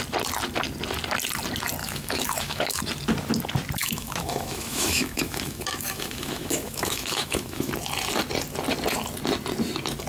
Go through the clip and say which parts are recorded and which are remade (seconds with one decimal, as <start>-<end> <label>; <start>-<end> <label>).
0.0-1.8 recorded; 1.8-2.8 remade; 2.8-3.8 recorded; 3.8-7.7 remade; 7.7-10.1 recorded